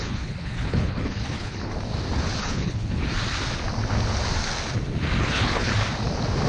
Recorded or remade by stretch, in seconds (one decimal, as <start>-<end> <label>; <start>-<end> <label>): 0.0-1.7 remade; 1.7-2.4 recorded; 2.4-3.0 remade; 3.0-5.2 recorded; 5.2-5.7 remade; 5.7-6.5 recorded